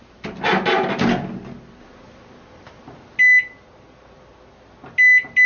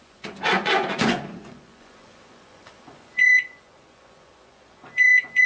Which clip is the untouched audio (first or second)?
first